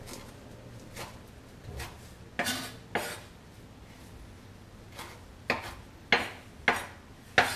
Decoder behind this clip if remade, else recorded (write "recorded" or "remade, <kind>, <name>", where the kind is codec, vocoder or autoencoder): recorded